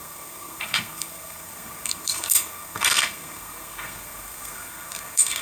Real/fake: fake